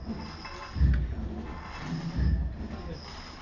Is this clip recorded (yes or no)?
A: yes